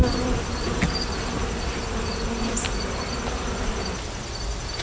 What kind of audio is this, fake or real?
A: real